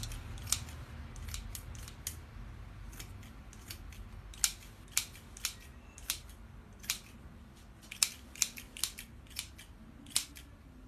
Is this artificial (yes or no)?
no